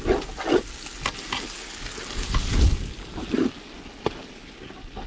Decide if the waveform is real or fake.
real